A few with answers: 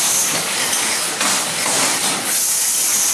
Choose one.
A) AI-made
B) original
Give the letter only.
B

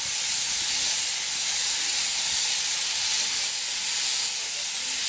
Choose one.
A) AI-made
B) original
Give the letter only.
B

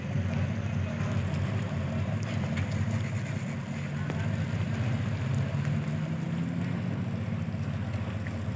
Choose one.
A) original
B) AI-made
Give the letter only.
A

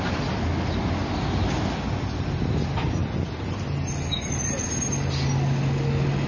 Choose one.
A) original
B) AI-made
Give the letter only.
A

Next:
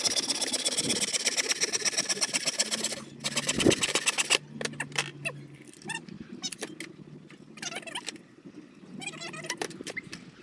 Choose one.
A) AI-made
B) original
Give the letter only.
B